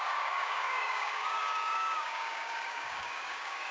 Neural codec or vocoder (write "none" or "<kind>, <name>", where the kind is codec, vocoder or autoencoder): codec, DAC